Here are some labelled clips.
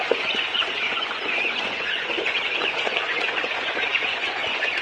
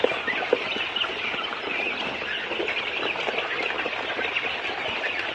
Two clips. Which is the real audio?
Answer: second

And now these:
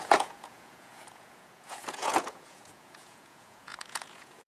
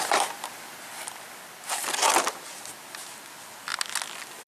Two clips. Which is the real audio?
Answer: second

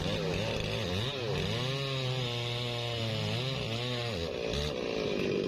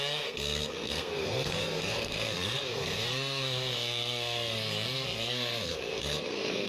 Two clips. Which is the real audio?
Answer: first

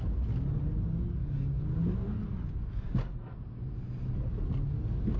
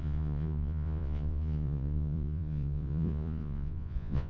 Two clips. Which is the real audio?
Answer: first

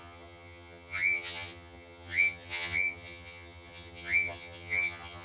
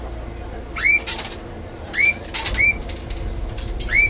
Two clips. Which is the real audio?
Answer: second